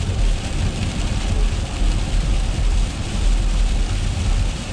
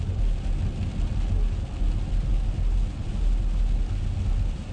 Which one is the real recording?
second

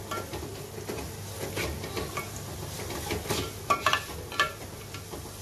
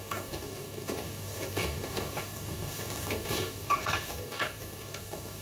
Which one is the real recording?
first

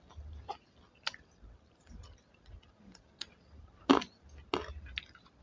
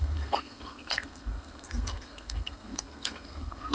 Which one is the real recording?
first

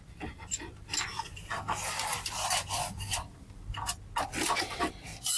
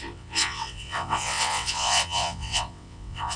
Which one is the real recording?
first